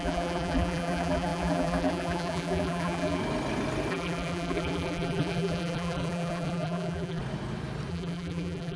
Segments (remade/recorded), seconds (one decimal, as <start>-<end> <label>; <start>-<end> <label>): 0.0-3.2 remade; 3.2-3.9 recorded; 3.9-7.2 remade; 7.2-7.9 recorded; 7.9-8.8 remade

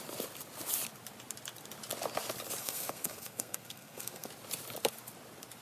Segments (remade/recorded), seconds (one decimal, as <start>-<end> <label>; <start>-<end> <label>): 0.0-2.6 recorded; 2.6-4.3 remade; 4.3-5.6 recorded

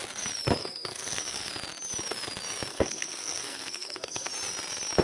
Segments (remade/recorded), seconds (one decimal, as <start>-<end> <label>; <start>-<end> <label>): 0.0-0.6 recorded; 0.6-1.5 remade; 1.5-2.7 recorded; 2.7-4.3 remade; 4.3-5.0 recorded

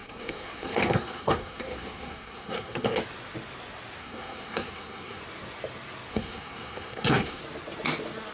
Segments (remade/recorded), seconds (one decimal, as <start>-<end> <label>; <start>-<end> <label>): 0.0-3.0 remade; 3.0-4.0 recorded; 4.0-5.2 remade; 5.2-6.1 recorded; 6.1-7.4 remade; 7.4-8.3 recorded